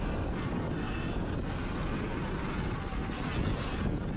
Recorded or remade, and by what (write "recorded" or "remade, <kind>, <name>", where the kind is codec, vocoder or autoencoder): recorded